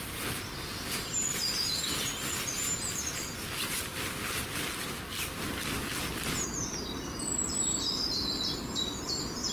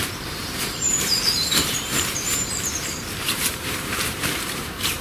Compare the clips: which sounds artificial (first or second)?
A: second